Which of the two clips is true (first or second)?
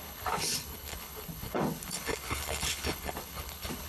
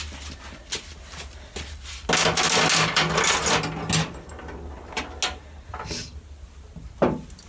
second